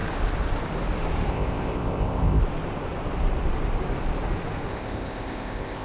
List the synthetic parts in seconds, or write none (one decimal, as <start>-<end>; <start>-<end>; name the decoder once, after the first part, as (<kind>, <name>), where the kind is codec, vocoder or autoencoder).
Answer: 1.3-2.4 (codec, ZipCodec); 4.7-5.8